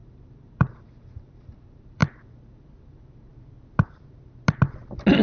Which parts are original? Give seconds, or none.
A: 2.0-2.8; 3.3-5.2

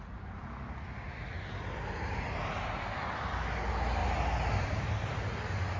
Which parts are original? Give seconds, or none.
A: 0.0-5.8